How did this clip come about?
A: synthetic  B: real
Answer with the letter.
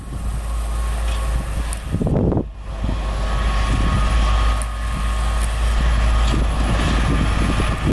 B